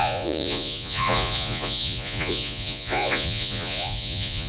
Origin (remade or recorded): remade